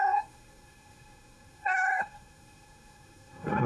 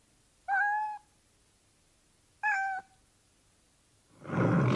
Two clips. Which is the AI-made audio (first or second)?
first